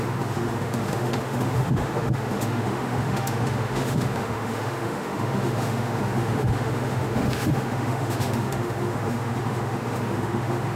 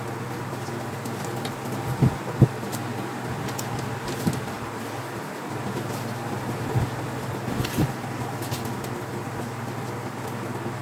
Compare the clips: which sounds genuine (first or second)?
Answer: second